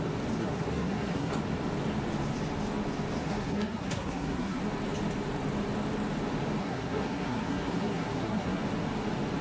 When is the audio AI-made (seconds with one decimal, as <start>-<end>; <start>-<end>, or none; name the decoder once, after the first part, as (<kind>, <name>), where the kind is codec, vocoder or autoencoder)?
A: 0.4-1.3 (codec, SNAC); 3.2-4.6; 6.6-8.6